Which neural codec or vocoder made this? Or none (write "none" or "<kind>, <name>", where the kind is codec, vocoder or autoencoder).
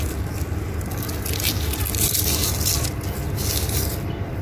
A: none